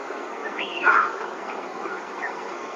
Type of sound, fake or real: fake